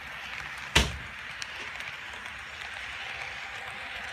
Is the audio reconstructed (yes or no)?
no